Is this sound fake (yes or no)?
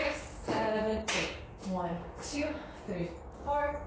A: yes